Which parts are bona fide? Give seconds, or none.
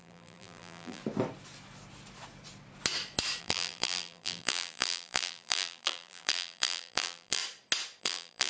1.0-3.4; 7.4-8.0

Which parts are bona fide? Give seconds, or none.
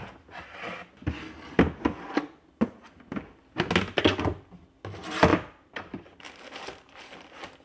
0.0-5.3; 7.0-7.6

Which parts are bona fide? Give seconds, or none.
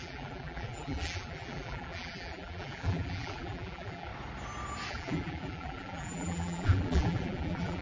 4.1-4.9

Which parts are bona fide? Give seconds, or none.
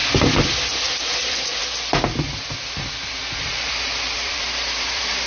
0.0-1.2; 1.6-3.1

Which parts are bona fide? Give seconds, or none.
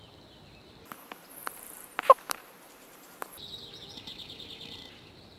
0.0-1.4; 3.4-4.1; 5.0-5.4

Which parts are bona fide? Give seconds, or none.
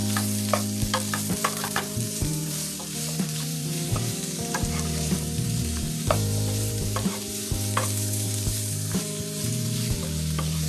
0.0-1.4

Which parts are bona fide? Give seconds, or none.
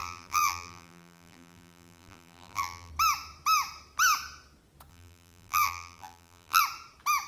2.9-4.9; 6.6-7.3